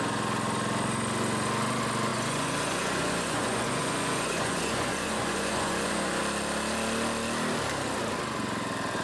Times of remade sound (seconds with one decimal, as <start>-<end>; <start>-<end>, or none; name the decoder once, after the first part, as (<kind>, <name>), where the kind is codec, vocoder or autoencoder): 2.1-6.2 (vocoder, Vocos)